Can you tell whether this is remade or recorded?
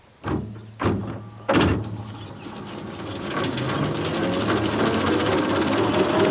recorded